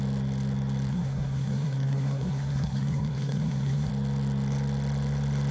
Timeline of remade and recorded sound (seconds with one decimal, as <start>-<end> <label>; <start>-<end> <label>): 0.0-0.9 recorded; 0.9-3.9 remade; 3.9-5.5 recorded